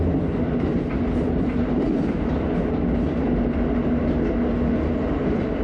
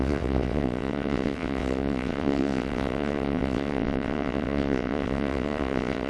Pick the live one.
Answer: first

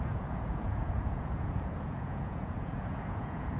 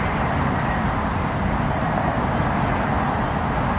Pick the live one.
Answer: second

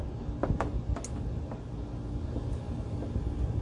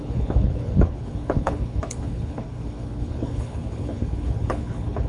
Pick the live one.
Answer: first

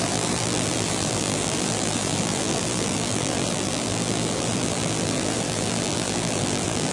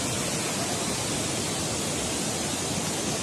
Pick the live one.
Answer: second